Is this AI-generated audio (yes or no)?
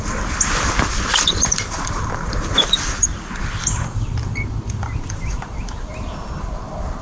yes